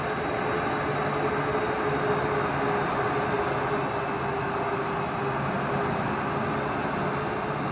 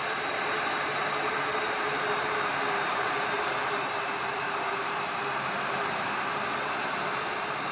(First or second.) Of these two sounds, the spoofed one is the second